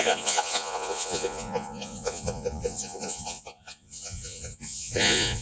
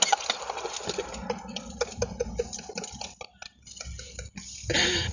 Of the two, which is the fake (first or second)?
first